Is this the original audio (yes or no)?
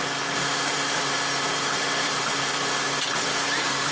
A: yes